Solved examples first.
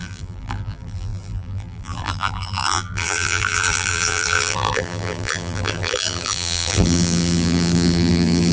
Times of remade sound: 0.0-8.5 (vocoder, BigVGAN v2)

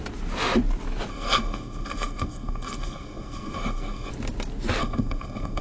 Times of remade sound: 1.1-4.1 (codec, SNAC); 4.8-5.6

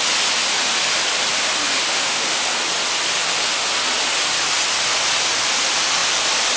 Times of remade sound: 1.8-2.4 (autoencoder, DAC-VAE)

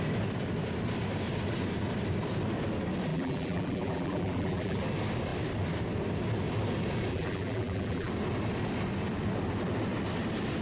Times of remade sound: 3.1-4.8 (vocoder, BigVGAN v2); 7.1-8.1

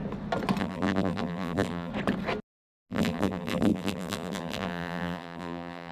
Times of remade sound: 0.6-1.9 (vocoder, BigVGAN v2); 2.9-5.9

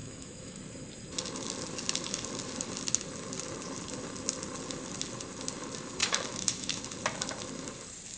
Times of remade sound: 0.0-0.6 (autoencoder, DAC-VAE); 6.0-6.8